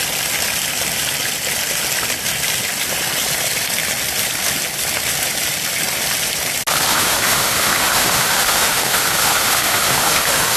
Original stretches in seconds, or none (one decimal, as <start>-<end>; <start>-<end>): 0.0-6.9